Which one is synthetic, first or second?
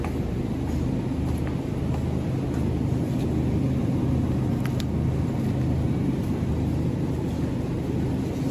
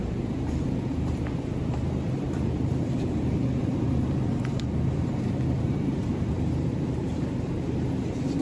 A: second